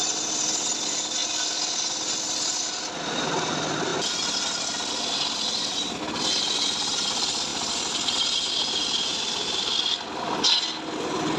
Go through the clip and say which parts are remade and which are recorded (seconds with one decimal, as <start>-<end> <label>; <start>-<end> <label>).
0.0-11.4 recorded